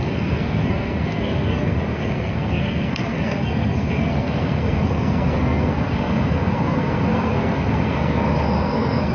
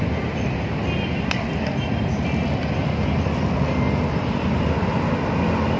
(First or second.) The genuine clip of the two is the second